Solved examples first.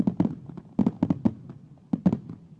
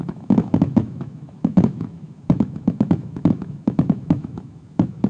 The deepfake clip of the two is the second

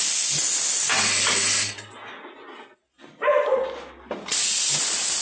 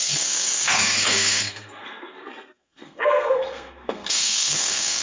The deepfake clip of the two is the second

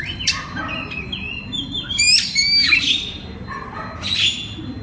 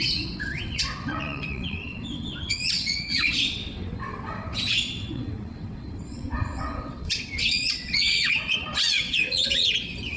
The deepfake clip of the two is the second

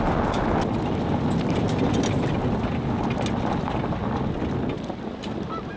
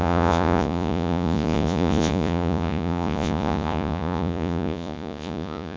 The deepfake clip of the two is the second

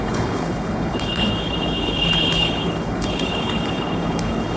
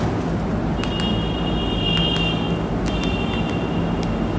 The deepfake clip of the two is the first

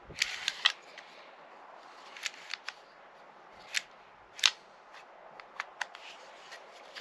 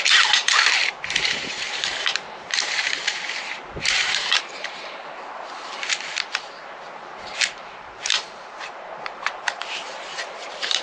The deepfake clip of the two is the second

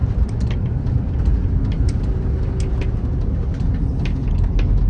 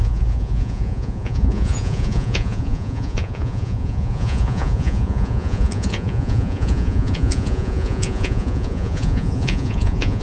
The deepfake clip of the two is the second